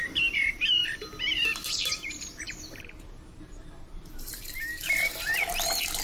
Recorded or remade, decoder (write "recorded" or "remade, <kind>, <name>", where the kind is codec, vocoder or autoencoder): remade, vocoder, BigVGAN v2